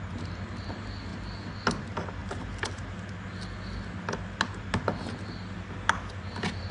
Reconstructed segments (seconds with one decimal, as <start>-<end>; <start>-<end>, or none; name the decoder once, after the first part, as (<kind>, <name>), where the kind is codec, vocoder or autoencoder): none